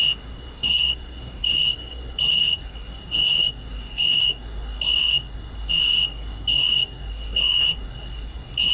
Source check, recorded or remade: remade